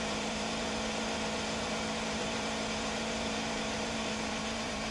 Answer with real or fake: fake